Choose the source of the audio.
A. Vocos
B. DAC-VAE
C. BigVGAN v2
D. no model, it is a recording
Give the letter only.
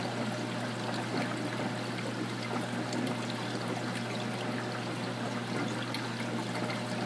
D